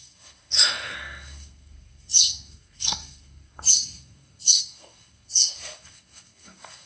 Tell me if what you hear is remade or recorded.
remade